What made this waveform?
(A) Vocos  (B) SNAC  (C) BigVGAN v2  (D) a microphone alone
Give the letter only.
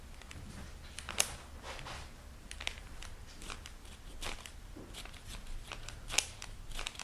D